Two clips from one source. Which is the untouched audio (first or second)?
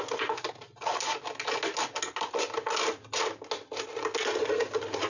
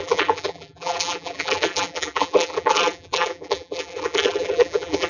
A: first